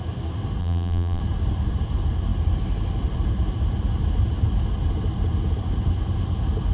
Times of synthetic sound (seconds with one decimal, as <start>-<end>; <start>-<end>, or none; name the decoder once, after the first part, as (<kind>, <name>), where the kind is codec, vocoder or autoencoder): 0.6-1.2 (vocoder, BigVGAN v2)